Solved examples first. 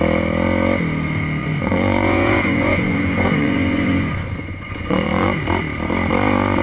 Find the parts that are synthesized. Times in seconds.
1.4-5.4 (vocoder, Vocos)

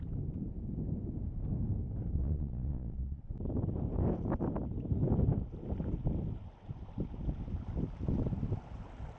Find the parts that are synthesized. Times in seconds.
2.2-3.3 (vocoder, Vocos)

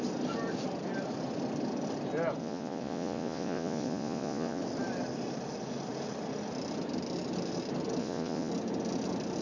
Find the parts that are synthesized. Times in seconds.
2.4-4.6 (vocoder, Vocos); 8.0-8.5

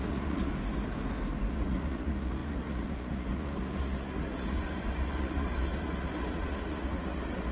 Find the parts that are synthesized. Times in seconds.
0.0-0.5 (vocoder, Vocos); 1.5-7.5

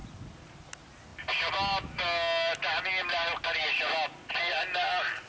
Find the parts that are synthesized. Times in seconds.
none

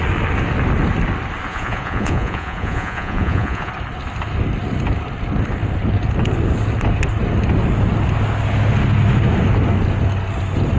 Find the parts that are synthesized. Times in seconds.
1.5-3.7 (vocoder, Vocos)

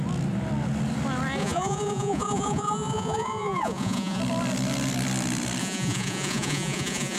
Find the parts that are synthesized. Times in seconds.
1.4-4.2 (vocoder, Vocos); 5.6-7.2